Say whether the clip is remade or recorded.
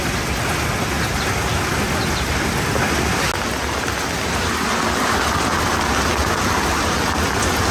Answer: recorded